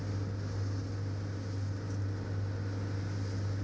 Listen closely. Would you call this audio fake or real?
real